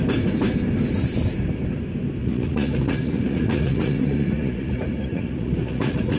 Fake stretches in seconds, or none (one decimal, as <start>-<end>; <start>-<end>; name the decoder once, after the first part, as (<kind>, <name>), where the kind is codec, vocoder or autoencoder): 2.2-6.2 (vocoder, Vocos)